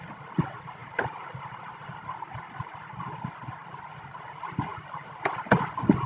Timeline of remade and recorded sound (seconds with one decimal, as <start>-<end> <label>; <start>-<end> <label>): 0.0-0.8 recorded; 0.8-1.8 remade; 1.8-4.7 recorded; 4.7-5.2 remade; 5.2-6.1 recorded